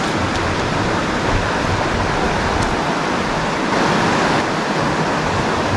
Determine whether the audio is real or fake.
real